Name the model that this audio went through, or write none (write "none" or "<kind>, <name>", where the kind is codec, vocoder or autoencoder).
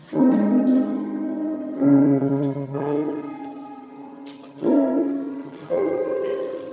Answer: vocoder, HiFi-GAN